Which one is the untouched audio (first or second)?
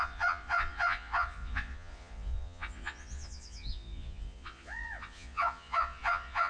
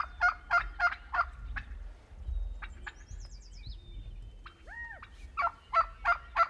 second